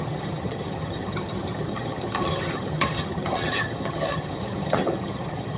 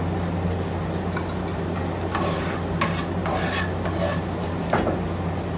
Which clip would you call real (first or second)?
second